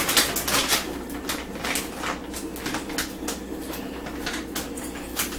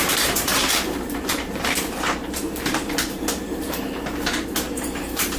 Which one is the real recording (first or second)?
first